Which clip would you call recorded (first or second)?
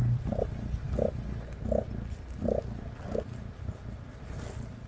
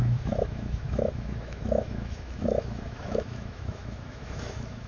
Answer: first